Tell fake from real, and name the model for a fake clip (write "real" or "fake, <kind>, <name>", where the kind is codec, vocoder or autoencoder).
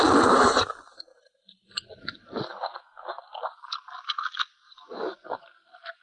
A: real